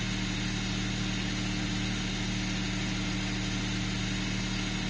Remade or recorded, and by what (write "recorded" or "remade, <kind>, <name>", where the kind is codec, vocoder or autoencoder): recorded